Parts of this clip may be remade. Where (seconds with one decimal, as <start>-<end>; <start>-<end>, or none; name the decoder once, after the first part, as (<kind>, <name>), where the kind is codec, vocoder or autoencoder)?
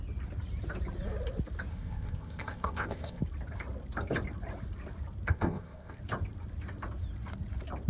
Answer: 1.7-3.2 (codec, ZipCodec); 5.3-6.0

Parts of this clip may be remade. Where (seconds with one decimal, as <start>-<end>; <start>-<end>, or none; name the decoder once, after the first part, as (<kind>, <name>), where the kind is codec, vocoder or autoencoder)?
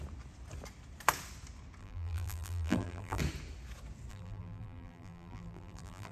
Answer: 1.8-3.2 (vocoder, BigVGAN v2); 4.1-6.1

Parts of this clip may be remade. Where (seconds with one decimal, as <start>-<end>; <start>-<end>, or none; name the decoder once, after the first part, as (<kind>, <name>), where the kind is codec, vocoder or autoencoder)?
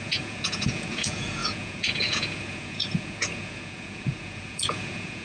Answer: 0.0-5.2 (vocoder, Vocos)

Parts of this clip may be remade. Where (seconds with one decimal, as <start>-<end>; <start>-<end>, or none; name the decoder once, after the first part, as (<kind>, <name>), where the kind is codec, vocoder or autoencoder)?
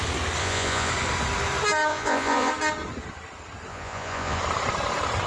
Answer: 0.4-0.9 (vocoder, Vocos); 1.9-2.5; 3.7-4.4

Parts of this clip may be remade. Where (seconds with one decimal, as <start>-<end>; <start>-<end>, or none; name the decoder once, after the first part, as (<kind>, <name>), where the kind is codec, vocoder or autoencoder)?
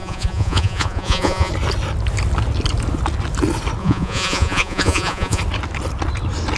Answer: 0.0-1.5 (vocoder, Vocos); 3.8-5.4